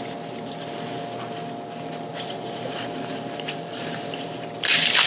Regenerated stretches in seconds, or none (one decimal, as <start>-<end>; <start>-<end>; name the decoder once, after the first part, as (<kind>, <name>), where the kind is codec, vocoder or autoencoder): 2.1-5.1 (vocoder, BigVGAN v2)